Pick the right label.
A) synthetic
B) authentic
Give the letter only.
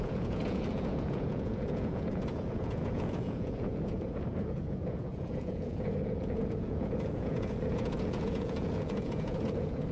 A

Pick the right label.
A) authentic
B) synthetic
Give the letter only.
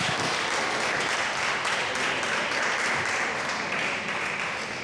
A